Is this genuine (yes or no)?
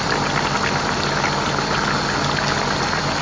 yes